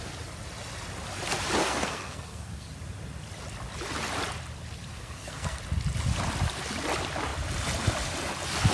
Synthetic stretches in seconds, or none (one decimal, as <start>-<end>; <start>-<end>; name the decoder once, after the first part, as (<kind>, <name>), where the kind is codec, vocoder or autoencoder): 1.6-2.7 (codec, SNAC); 4.9-5.6